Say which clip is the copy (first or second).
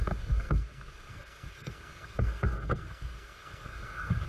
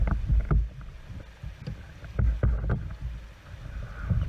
first